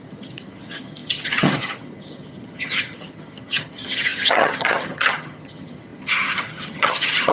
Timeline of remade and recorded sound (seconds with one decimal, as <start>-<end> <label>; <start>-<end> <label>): 0.0-7.3 remade